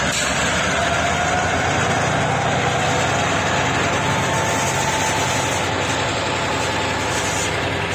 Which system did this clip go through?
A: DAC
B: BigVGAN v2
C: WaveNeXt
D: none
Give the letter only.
D